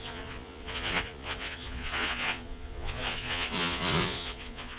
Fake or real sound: fake